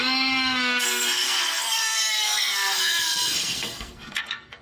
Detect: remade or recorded remade